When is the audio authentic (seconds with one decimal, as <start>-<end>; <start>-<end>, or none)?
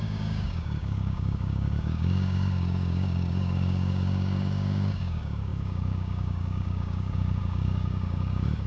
none